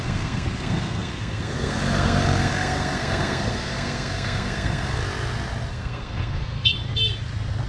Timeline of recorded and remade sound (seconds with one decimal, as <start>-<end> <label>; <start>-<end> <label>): 0.0-5.0 remade; 5.0-5.7 recorded; 5.7-6.7 remade; 6.7-7.7 recorded